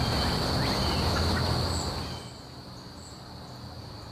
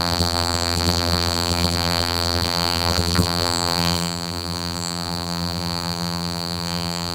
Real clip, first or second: first